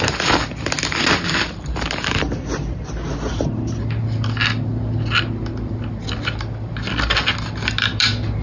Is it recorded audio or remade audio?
recorded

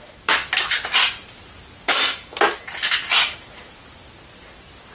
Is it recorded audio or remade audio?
recorded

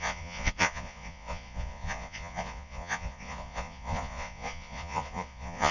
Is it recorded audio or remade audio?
remade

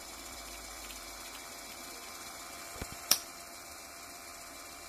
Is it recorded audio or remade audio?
remade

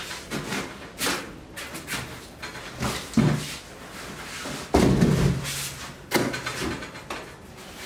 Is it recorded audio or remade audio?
recorded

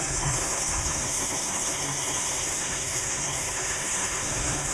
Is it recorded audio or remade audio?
remade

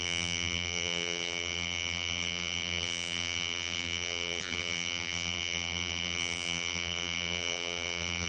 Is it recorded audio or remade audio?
remade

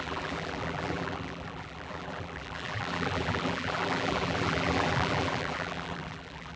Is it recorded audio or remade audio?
remade